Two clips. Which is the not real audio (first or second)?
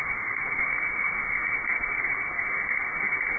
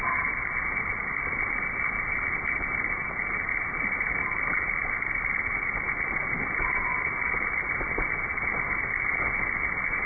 first